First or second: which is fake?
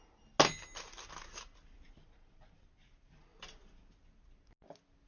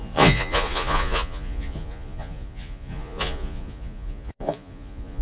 second